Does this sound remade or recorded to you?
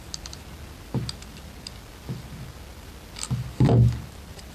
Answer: recorded